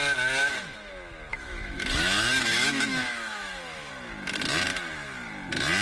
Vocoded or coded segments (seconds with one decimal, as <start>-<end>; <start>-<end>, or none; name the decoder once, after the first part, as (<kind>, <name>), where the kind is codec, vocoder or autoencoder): 0.4-0.9 (autoencoder, DAC-VAE); 1.3-3.9